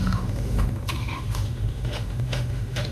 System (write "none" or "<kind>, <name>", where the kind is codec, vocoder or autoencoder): autoencoder, DAC-VAE